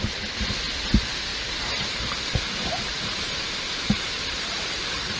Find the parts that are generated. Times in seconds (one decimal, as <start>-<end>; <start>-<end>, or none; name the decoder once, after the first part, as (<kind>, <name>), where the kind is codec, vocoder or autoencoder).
1.3-4.4 (vocoder, BigVGAN v2)